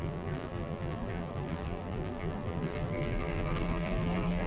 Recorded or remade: remade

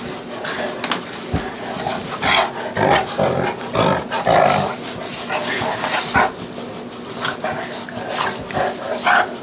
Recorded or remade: recorded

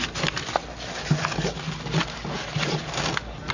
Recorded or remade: recorded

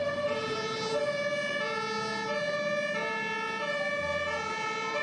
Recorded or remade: recorded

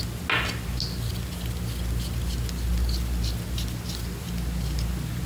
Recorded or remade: recorded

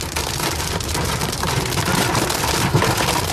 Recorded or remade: recorded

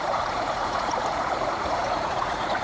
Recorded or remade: remade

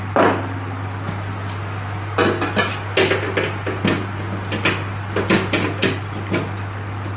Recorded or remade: recorded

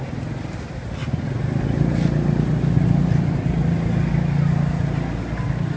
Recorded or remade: recorded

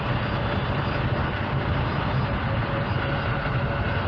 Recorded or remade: recorded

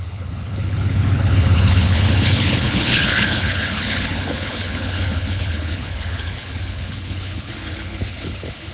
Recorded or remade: remade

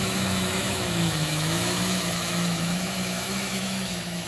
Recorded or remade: remade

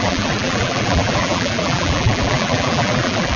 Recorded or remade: remade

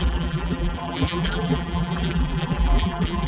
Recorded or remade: remade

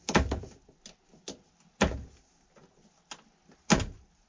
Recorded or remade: recorded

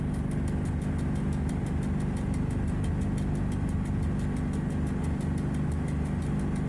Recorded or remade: recorded